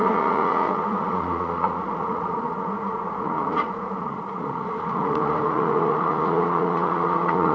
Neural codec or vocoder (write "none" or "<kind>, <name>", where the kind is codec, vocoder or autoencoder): vocoder, Vocos